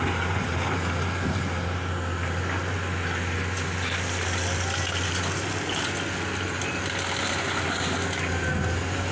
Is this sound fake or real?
real